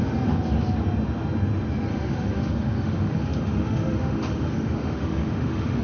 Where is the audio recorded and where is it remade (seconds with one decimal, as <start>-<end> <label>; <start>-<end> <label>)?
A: 0.0-1.9 recorded; 1.9-5.8 remade